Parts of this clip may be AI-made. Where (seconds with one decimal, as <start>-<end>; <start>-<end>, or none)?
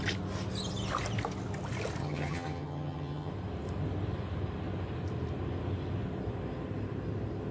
2.0-3.3